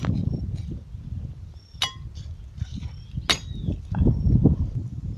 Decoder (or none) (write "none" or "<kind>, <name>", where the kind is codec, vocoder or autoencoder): none